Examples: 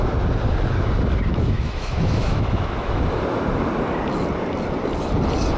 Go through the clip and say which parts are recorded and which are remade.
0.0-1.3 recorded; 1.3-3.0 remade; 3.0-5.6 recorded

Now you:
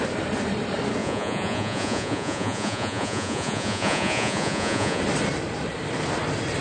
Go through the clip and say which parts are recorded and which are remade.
0.0-1.0 recorded; 1.0-5.0 remade; 5.0-6.6 recorded

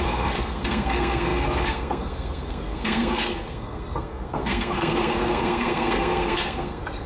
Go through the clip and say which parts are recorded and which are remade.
0.0-7.1 remade

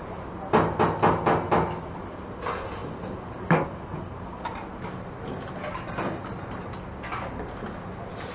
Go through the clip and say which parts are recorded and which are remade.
0.0-8.3 recorded